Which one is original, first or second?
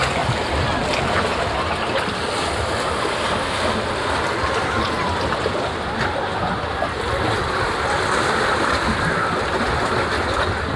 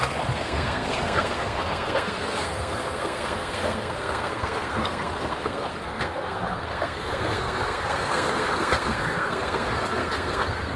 first